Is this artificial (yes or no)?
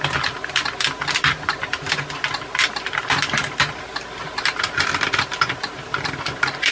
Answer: no